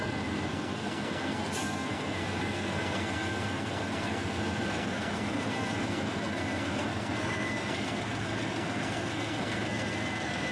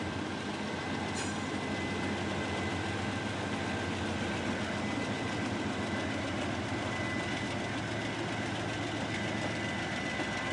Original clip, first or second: second